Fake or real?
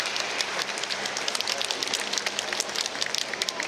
real